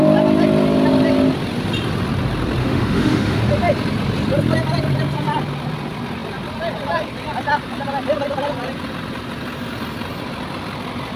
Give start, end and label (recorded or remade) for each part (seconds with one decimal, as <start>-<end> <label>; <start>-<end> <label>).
0.0-2.6 recorded; 2.6-3.4 remade; 3.4-11.2 recorded